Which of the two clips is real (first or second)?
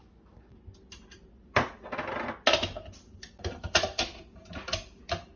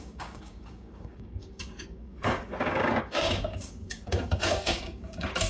first